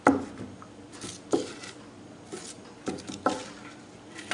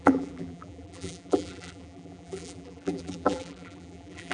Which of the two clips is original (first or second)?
first